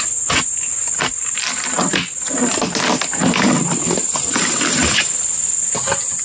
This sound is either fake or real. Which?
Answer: real